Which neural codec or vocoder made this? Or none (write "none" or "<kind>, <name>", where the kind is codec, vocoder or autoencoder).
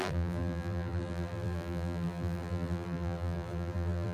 vocoder, BigVGAN v2